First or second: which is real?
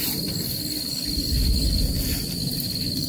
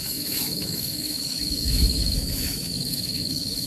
first